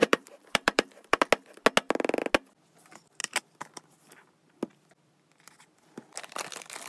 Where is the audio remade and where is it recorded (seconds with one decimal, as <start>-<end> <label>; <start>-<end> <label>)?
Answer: 0.0-1.2 remade; 1.2-3.2 recorded; 3.2-3.9 remade; 3.9-6.9 recorded